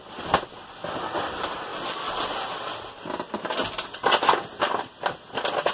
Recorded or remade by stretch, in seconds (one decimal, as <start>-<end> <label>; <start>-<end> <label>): 0.0-5.7 recorded